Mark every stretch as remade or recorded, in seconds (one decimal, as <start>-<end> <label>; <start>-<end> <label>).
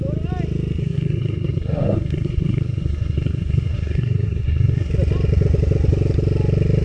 0.0-0.8 recorded; 0.8-4.9 remade; 4.9-6.8 recorded